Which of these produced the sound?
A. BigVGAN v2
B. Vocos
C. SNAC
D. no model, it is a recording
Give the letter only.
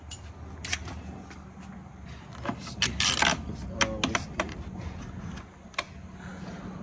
D